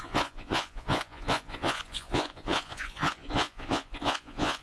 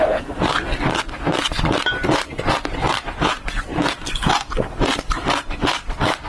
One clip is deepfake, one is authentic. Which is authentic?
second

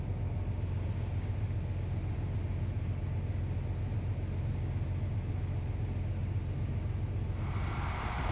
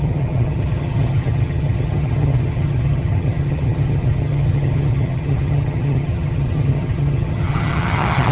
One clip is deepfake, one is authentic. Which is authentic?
first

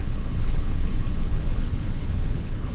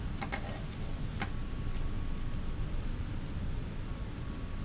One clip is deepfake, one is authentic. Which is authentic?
second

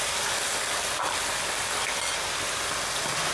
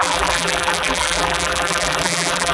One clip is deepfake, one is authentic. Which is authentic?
first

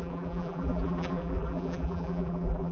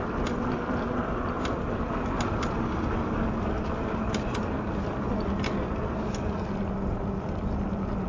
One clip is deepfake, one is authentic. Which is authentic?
second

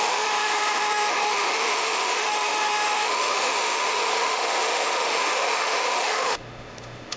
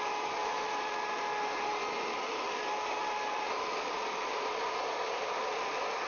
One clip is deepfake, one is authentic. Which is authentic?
second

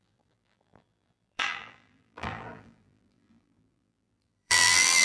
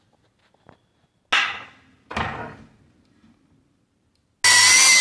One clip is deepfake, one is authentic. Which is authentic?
second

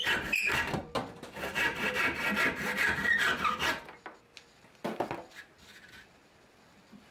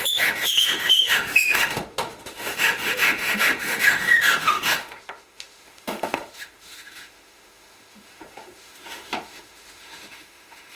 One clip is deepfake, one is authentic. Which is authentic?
first